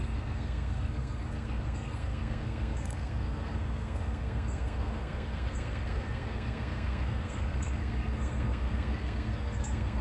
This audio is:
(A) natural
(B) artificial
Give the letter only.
B